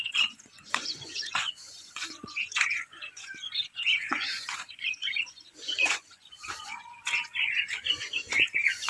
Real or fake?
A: fake